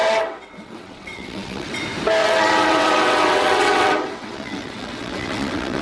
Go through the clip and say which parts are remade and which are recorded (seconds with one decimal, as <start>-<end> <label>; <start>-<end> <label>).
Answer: 0.0-1.8 remade; 1.8-2.2 recorded; 2.2-5.8 remade